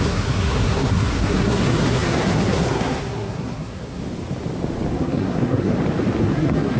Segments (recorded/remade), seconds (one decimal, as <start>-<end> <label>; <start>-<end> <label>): 0.0-4.0 remade; 4.0-4.9 recorded; 4.9-5.7 remade; 5.7-6.2 recorded; 6.2-6.8 remade